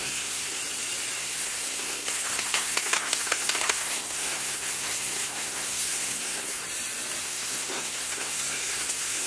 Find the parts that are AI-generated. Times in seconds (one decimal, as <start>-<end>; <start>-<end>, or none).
0.0-0.6; 1.2-6.6; 7.2-9.3